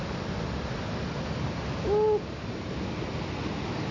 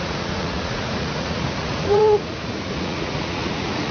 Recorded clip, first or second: first